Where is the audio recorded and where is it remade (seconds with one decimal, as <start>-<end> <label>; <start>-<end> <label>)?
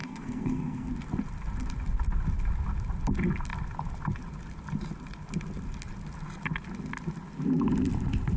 0.0-0.9 remade; 0.9-8.4 recorded